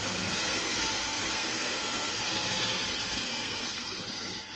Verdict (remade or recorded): remade